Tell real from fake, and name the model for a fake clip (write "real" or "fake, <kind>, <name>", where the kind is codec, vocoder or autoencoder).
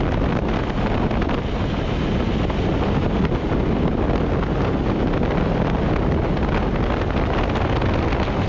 real